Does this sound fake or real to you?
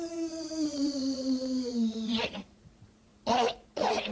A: fake